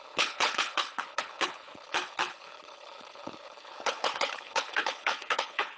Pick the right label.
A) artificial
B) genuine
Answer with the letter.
A